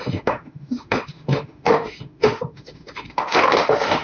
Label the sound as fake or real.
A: fake